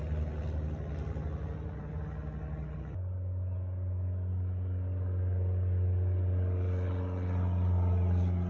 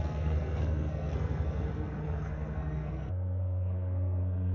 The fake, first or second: second